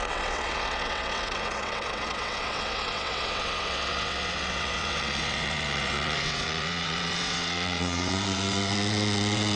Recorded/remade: remade